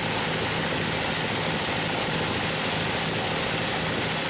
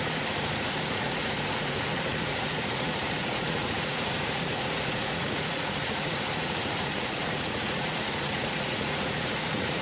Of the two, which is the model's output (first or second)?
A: second